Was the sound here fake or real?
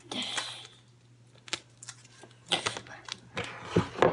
real